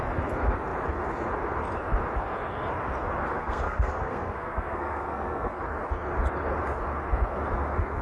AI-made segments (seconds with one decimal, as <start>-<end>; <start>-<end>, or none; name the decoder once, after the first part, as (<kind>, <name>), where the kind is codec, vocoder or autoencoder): 3.2-5.6 (codec, SNAC)